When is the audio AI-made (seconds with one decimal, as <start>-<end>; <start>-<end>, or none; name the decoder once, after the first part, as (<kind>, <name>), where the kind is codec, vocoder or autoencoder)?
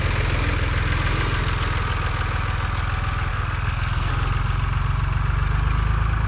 3.3-4.1 (codec, SNAC)